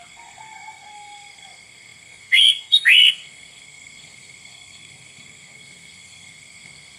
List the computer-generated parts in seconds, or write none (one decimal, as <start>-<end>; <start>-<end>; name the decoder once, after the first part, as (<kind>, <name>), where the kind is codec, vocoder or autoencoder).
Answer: 0.0-7.0 (codec, SNAC)